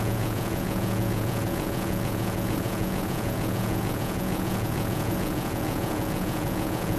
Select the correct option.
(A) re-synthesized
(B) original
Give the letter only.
A